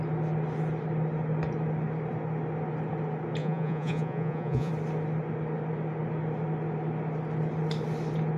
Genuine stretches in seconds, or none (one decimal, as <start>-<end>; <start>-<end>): 0.0-3.4; 4.7-8.4